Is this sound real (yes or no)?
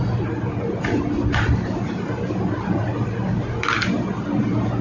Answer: yes